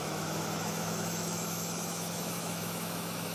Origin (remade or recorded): remade